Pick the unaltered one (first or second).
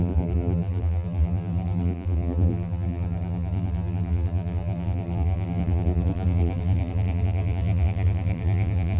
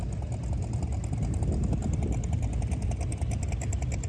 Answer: second